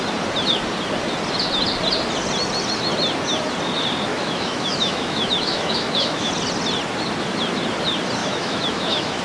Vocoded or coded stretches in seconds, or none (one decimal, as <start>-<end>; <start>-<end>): 4.1-6.3; 8.2-9.2